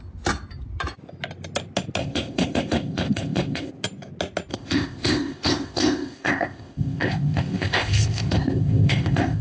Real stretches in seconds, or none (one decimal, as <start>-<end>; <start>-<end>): 0.0-2.0; 3.7-4.5

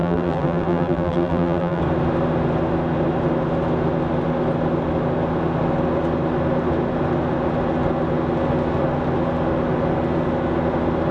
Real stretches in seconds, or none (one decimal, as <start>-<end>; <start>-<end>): 1.8-11.1